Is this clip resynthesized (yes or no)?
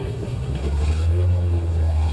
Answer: yes